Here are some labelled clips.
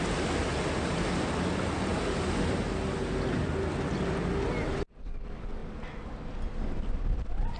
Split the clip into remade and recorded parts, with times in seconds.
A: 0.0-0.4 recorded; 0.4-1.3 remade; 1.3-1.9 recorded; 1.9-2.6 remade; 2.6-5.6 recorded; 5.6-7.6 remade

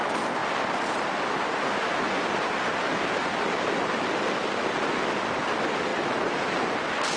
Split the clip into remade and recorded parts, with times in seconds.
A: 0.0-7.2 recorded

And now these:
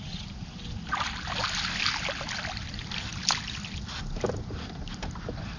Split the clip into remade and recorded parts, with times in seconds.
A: 0.0-5.6 recorded